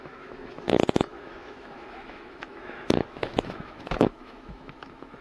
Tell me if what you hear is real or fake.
fake